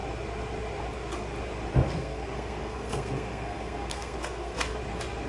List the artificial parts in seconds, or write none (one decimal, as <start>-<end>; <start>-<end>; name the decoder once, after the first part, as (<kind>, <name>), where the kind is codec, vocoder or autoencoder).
1.7-4.8 (codec, SNAC)